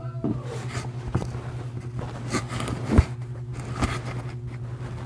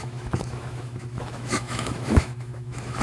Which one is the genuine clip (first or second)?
first